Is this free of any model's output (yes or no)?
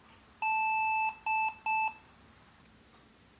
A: yes